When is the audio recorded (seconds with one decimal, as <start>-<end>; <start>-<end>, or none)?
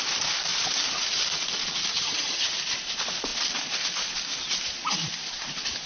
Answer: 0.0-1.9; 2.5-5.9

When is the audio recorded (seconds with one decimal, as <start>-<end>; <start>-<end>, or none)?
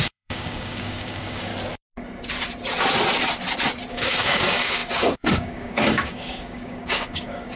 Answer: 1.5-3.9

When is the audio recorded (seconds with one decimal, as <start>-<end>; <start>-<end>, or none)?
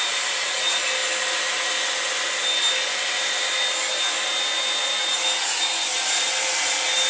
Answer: 0.0-5.9